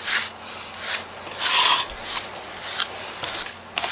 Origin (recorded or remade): recorded